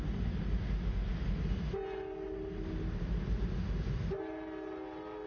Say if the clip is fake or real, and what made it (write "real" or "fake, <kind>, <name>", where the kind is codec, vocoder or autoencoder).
real